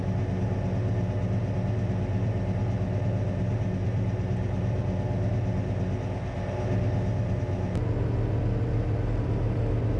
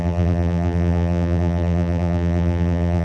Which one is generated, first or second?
second